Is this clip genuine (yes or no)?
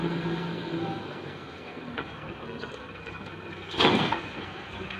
no